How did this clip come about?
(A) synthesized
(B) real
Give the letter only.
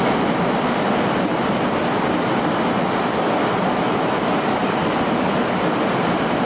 B